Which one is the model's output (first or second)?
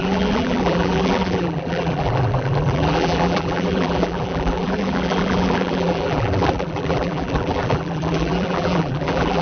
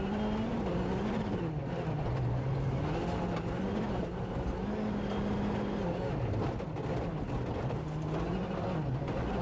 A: first